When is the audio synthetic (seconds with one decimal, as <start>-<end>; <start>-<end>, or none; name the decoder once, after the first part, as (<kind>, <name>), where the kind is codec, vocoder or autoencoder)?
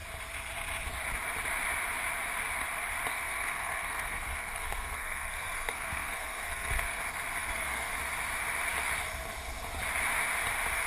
3.1-7.0 (codec, SNAC); 7.4-7.9